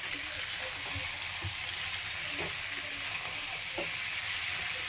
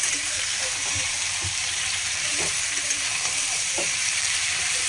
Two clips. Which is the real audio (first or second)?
first